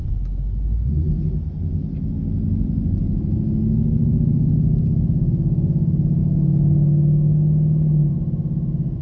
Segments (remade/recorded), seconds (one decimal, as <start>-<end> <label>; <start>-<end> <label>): 0.0-6.2 recorded; 6.2-7.9 remade; 7.9-9.0 recorded